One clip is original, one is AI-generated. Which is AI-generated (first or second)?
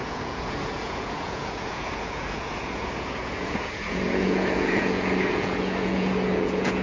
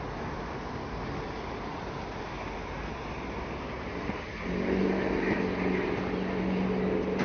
first